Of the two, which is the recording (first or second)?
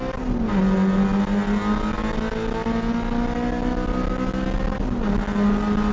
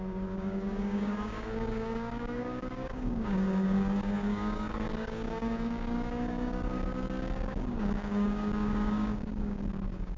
first